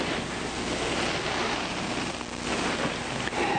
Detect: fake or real real